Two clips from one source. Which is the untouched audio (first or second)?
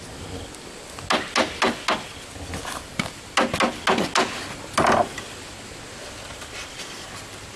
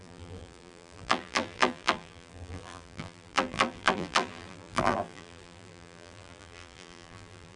first